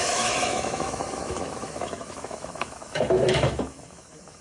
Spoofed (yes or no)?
yes